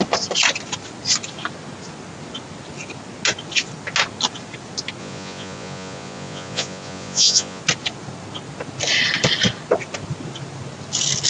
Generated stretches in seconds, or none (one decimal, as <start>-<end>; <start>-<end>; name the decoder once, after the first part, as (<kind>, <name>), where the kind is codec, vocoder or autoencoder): 5.0-7.6 (vocoder, Vocos)